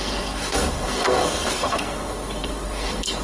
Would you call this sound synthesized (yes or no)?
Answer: yes